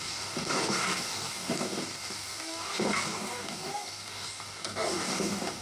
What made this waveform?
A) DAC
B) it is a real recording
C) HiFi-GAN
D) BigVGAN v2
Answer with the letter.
A